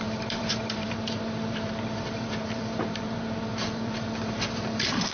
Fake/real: fake